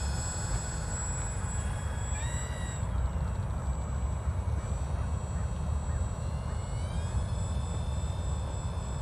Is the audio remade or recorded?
recorded